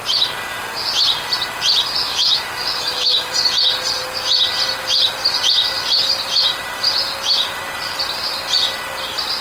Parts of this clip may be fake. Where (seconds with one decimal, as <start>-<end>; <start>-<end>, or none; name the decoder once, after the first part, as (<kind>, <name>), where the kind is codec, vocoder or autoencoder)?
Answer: 2.0-3.3 (autoencoder, DAC-VAE)